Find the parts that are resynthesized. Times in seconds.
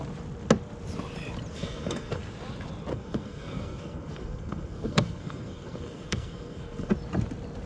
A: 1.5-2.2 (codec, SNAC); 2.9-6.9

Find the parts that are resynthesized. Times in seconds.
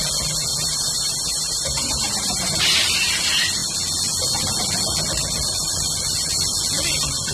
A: 0.5-2.5 (vocoder, BigVGAN v2)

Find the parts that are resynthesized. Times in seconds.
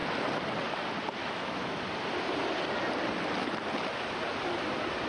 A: 1.2-1.8 (autoencoder, DAC-VAE)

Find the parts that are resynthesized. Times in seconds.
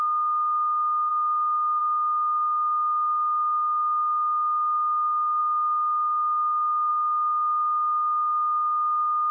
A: none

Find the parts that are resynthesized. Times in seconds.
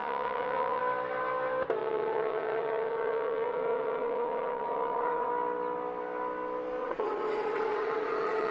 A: 0.0-0.8 (vocoder, WaveNeXt); 1.8-5.3; 6.8-8.5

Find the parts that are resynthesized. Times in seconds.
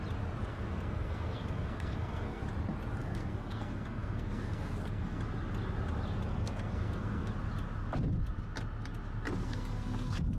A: 0.5-2.4 (codec, SNAC); 3.0-5.2; 6.3-7.3; 9.4-10.4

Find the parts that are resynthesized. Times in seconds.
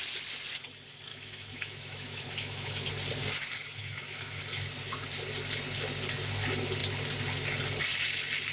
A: 1.1-2.9 (autoencoder, DAC-VAE); 3.8-4.4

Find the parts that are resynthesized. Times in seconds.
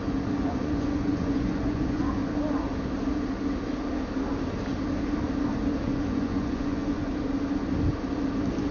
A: 0.0-2.2 (vocoder, Vocos); 5.8-7.1